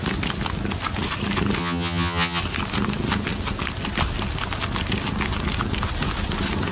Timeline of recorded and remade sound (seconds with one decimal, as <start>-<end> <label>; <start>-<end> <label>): 0.0-1.6 recorded; 1.6-2.4 remade; 2.4-6.7 recorded